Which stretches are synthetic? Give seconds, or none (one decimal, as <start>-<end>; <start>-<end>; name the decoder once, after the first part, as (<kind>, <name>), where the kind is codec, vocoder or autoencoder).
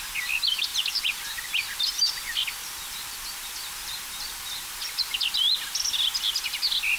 none